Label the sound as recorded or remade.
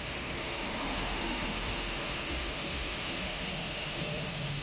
remade